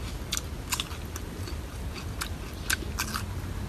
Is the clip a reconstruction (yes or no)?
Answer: no